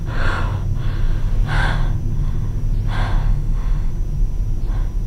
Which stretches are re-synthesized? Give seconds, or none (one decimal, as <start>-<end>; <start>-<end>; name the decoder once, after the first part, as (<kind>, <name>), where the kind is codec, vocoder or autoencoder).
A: 3.2-3.9 (autoencoder, DAC-VAE)